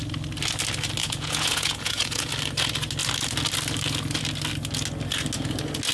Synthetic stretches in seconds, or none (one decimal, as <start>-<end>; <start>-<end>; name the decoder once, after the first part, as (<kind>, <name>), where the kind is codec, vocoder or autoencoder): 1.0-2.3 (vocoder, Vocos)